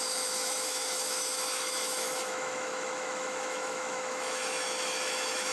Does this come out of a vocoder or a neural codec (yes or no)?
yes